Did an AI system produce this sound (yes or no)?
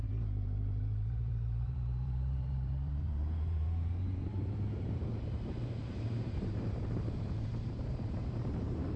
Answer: yes